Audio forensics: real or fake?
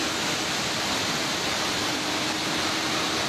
fake